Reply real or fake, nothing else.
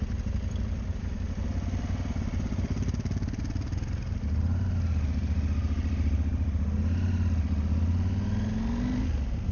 real